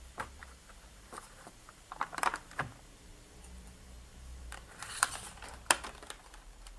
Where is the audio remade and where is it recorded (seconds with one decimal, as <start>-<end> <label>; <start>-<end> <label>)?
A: 0.0-6.8 remade